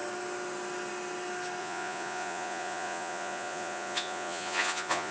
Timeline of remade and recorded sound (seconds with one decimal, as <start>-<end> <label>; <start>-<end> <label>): 0.0-1.6 recorded; 1.6-5.1 remade